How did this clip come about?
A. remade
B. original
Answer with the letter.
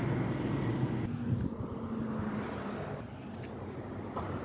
B